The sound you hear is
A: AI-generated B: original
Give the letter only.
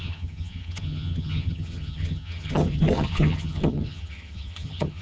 A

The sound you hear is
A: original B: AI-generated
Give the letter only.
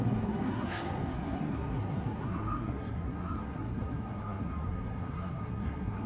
B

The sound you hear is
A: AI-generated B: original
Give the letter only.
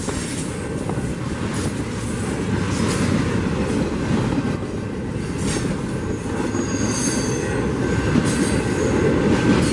B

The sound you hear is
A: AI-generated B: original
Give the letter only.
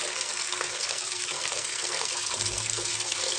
A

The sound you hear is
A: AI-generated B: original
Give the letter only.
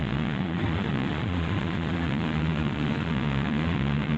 A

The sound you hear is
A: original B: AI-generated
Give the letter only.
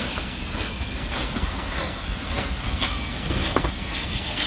B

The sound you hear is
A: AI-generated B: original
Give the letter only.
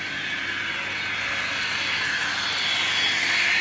B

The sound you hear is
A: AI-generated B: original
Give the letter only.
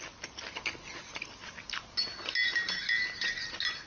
B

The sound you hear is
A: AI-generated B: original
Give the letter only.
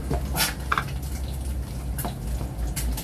B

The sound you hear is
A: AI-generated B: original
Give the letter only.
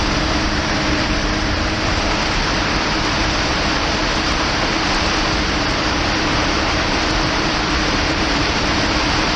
A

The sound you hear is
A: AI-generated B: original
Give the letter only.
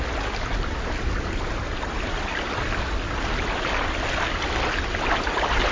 B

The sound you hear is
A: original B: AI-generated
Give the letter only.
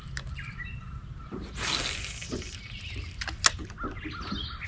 A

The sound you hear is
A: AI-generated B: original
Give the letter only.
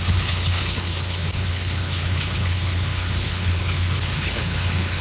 A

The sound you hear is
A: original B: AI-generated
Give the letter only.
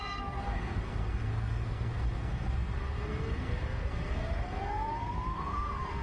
B